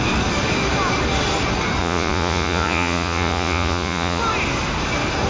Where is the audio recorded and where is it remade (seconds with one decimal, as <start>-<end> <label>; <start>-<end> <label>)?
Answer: 0.0-1.8 recorded; 1.8-4.2 remade; 4.2-5.3 recorded

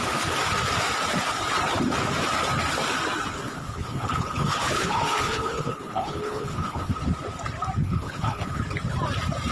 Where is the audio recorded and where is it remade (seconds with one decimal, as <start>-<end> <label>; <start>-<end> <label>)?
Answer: 0.0-3.3 recorded; 3.3-6.9 remade; 6.9-7.8 recorded; 7.8-8.6 remade; 8.6-9.5 recorded